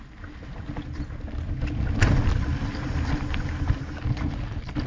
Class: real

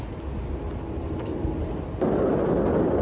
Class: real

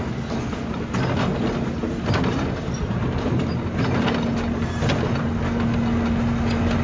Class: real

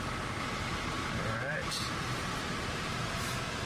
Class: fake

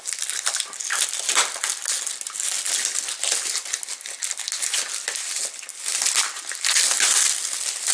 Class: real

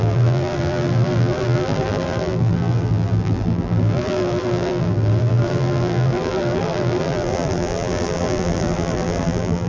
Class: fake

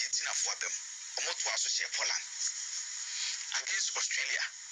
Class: fake